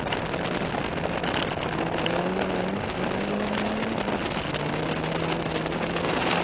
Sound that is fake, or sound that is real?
real